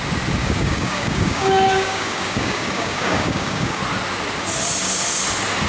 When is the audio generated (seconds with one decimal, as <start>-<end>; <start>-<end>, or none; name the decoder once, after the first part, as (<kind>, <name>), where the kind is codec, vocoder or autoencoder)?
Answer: 0.4-3.8 (codec, DAC)